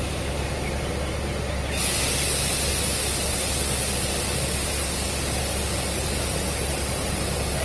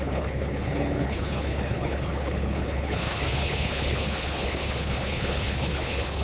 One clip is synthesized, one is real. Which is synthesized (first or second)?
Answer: second